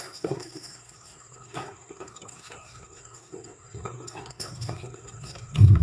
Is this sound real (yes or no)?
no